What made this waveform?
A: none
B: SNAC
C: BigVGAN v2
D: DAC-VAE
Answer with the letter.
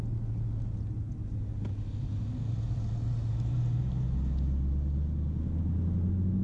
A